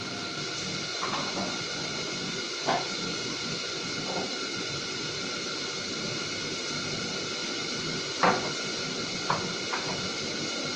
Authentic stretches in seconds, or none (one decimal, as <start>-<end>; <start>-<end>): 0.0-0.9; 4.0-4.5; 5.1-7.4; 9.6-10.8